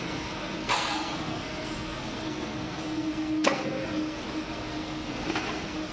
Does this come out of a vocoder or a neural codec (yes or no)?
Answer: yes